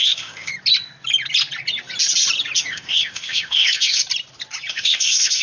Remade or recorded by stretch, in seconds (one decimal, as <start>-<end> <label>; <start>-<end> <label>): 0.0-0.5 remade; 0.5-2.7 recorded; 2.7-4.0 remade; 4.0-4.7 recorded; 4.7-5.4 remade